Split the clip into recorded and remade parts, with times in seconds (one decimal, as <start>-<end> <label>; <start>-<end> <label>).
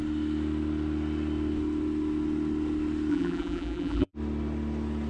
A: 0.0-3.1 recorded; 3.1-4.1 remade; 4.1-5.1 recorded